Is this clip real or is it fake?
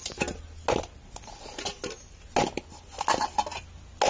real